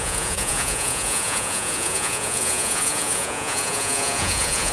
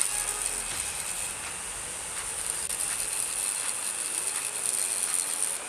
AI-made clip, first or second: first